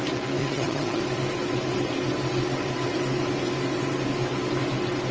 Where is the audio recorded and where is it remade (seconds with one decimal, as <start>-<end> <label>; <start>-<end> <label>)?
0.0-0.4 recorded; 0.4-1.0 remade; 1.0-5.1 recorded